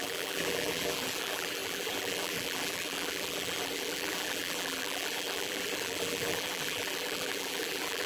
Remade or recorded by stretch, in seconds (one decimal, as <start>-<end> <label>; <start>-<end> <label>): 0.0-8.1 remade